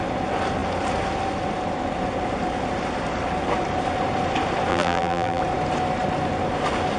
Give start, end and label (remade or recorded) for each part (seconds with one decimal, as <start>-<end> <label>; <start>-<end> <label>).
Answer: 0.0-4.7 recorded; 4.7-5.4 remade; 5.4-7.0 recorded